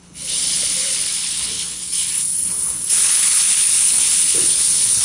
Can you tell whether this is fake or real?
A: fake